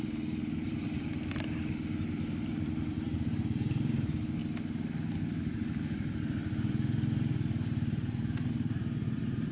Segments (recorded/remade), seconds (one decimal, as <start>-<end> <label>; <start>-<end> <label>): 0.0-4.4 remade; 4.4-5.2 recorded; 5.2-6.4 remade; 6.4-8.5 recorded; 8.5-9.5 remade